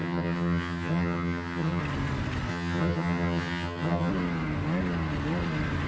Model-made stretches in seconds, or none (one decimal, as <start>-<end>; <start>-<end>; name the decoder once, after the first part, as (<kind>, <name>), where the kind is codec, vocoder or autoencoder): 0.0-1.8 (vocoder, HiFi-GAN); 2.5-4.1

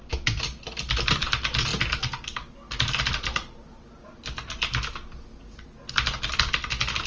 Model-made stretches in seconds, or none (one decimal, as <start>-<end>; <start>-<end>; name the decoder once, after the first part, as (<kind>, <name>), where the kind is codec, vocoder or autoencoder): none

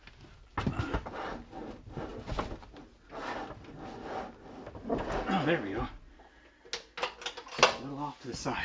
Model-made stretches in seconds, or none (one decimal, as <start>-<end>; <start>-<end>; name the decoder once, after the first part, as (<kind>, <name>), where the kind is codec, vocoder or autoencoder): none

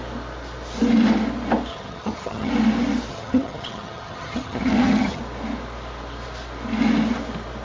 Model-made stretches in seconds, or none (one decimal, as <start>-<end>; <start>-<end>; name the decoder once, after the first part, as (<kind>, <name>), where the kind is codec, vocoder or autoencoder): 1.7-2.5 (vocoder, HiFi-GAN); 3.1-5.2

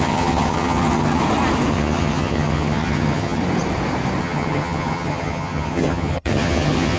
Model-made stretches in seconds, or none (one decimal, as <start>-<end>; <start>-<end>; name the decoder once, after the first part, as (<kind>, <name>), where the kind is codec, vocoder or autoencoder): 0.0-1.2 (vocoder, HiFi-GAN); 1.7-3.4; 4.2-7.0

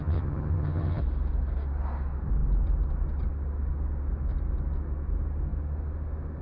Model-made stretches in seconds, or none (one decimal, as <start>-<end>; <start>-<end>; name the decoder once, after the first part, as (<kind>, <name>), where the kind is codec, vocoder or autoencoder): 0.0-1.0 (vocoder, HiFi-GAN)